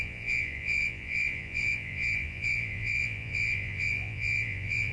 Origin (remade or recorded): remade